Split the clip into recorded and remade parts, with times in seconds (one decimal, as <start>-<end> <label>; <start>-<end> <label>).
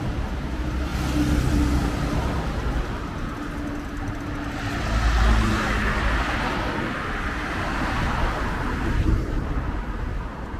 0.0-10.6 recorded